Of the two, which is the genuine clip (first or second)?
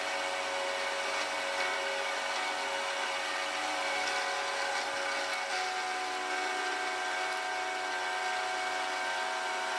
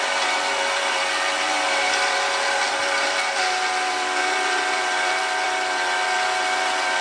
first